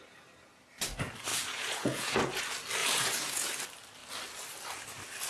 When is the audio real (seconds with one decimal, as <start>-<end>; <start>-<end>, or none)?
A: 0.0-1.3; 2.4-2.8; 3.5-5.3

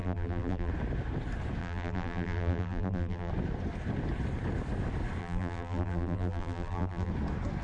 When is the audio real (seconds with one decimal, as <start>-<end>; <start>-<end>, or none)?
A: 0.7-1.6; 3.3-5.2; 7.1-7.6

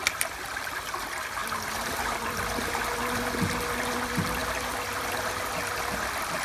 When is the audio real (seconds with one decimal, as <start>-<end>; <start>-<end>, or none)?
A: 0.0-6.4